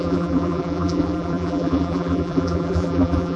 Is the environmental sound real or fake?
fake